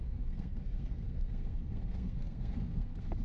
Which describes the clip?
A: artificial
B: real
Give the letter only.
A